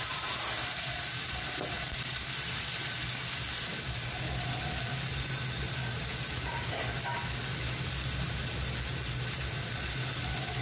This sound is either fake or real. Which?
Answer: real